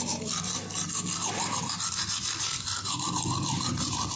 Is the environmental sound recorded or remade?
remade